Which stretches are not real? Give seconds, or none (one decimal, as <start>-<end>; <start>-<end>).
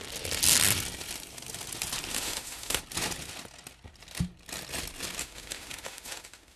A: 2.1-2.8; 5.2-6.6